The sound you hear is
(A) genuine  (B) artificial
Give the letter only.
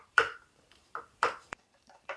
B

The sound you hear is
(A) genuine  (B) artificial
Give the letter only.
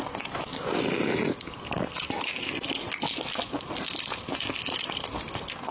A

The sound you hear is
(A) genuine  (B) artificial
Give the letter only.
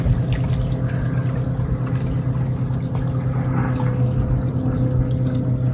A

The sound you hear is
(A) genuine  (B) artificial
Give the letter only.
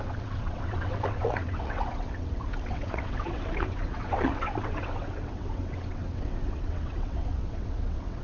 B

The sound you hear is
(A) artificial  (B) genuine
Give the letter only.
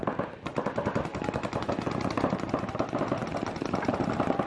B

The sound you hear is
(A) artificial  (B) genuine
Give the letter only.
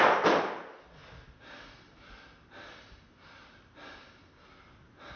B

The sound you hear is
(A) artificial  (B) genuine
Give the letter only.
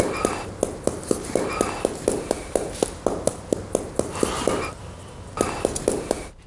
B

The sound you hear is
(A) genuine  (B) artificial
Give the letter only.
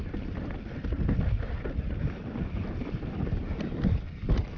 A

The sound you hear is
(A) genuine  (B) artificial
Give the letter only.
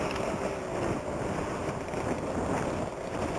A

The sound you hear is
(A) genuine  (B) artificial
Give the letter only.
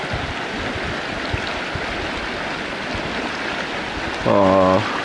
A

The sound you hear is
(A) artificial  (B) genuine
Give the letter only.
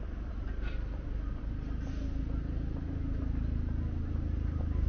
B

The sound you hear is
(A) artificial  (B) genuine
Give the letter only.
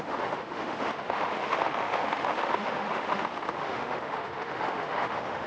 A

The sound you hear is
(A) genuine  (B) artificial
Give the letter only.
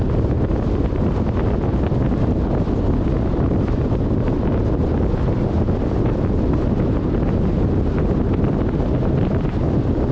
A